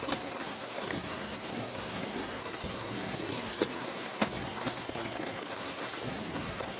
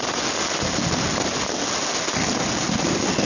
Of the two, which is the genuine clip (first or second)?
second